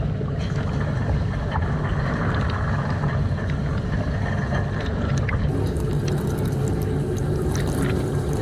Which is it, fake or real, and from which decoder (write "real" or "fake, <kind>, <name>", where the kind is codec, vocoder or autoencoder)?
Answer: real